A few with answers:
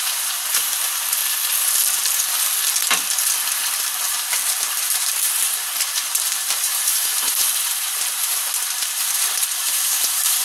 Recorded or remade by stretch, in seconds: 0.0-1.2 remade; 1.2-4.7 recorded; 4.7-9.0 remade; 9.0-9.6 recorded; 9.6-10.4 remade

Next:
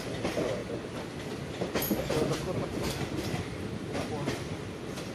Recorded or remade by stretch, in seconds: 0.0-5.1 recorded

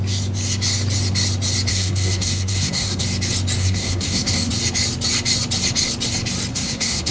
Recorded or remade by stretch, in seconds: 0.0-1.7 recorded; 1.7-3.0 remade; 3.0-3.6 recorded; 3.6-4.5 remade; 4.5-6.5 recorded; 6.5-7.1 remade

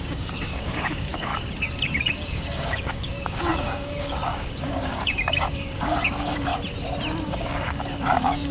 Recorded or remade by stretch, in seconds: 0.0-1.3 remade; 1.3-2.0 recorded; 2.0-6.5 remade; 6.5-7.2 recorded; 7.2-8.5 remade

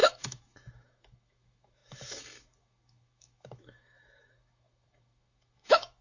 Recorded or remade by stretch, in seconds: 0.0-6.0 remade